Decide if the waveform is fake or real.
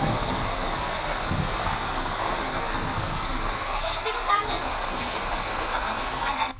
fake